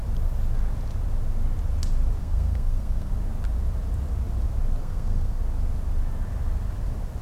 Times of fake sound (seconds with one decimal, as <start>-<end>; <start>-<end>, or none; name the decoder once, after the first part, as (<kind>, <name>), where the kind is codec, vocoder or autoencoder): 2.2-3.1 (codec, SNAC); 4.8-5.4

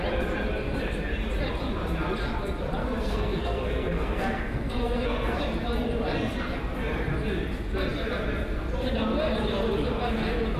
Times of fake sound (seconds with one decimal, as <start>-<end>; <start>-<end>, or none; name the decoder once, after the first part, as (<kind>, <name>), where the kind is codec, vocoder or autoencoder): 2.8-5.4 (codec, SNAC)

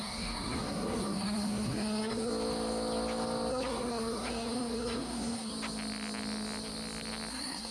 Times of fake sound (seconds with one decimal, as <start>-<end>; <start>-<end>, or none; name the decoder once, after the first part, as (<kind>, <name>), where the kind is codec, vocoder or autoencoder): 0.0-2.3 (codec, SNAC); 3.5-5.5; 7.3-7.7

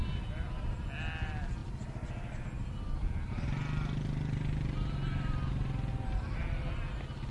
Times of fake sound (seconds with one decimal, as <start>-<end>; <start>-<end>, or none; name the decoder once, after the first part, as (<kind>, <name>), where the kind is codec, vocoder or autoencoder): none

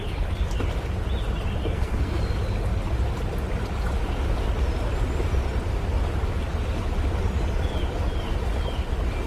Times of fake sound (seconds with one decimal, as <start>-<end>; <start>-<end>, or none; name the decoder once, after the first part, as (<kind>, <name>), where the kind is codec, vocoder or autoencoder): 1.6-2.2 (codec, SNAC)